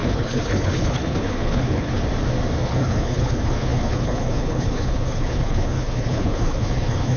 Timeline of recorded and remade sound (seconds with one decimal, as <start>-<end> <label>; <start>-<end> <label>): 0.0-1.9 remade; 1.9-2.6 recorded; 2.6-7.2 remade